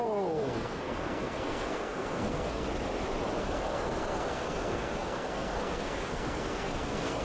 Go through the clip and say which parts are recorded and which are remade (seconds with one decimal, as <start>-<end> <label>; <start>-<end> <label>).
0.0-2.7 remade; 2.7-3.4 recorded; 3.4-7.2 remade